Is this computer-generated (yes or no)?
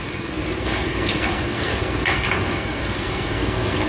yes